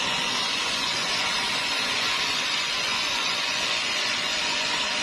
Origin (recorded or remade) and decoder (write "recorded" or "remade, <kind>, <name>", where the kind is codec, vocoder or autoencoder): remade, vocoder, Vocos